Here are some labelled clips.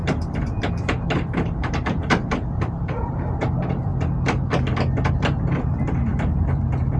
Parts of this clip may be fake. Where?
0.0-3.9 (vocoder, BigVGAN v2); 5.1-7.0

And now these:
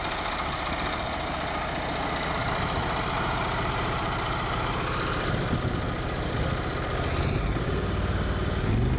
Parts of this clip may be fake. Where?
none

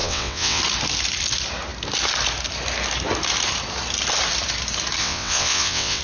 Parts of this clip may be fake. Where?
0.0-0.6 (vocoder, WaveNeXt); 5.0-6.0

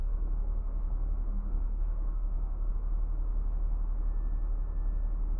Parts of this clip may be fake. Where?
0.0-2.7 (codec, SNAC)

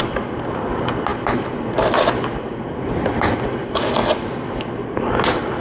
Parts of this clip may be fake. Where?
none

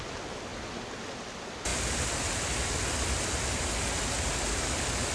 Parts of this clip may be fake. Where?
none